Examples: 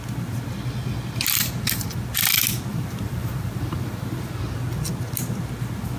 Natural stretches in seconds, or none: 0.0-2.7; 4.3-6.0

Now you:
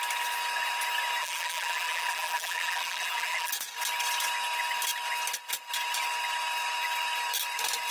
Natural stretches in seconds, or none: 0.0-1.2; 3.5-7.9

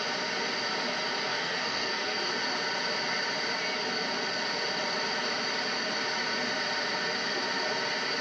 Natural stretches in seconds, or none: 0.0-1.3; 2.2-8.2

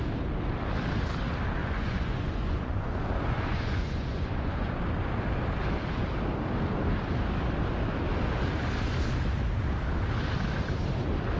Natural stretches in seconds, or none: 0.0-1.6; 4.8-11.4